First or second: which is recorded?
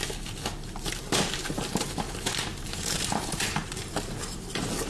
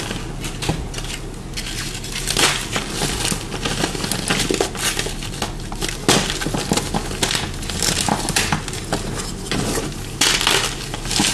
second